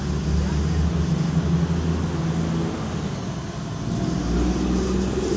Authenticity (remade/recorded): recorded